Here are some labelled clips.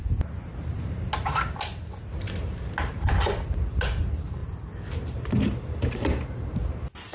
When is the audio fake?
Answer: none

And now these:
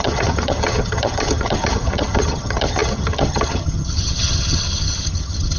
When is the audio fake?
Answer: 0.0-5.6 (vocoder, HiFi-GAN)

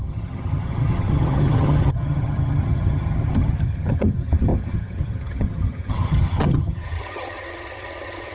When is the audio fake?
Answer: 0.0-8.3 (vocoder, HiFi-GAN)

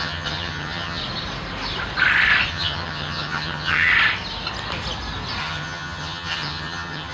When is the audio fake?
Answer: 0.0-1.0 (vocoder, HiFi-GAN); 2.5-3.9; 5.4-7.1

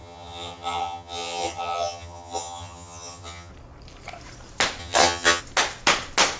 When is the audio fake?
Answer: 0.0-3.5 (vocoder, HiFi-GAN); 4.8-5.4